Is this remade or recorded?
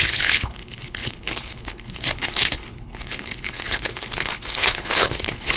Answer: remade